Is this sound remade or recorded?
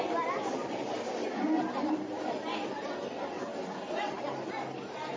recorded